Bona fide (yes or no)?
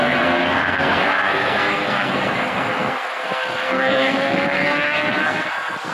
no